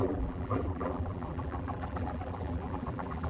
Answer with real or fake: fake